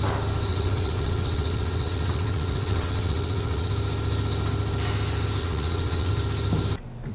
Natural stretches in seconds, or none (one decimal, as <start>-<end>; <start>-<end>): 0.0-0.5; 3.7-5.4; 6.1-7.1